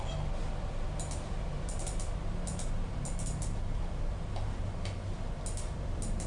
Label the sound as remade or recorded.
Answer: recorded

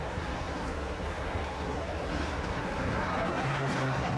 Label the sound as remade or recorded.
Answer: remade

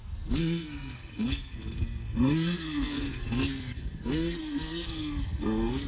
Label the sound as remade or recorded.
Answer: remade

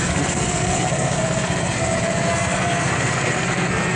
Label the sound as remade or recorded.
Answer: remade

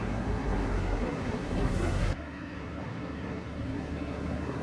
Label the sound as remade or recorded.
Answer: remade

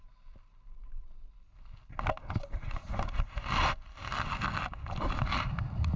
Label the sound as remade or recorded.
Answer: recorded